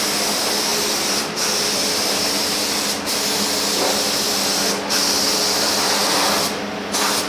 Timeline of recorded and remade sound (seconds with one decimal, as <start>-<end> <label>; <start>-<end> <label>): 0.0-7.3 recorded